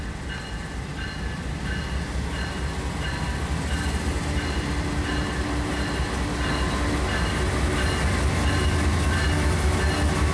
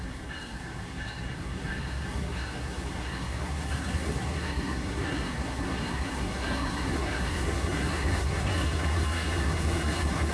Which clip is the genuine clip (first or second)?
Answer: first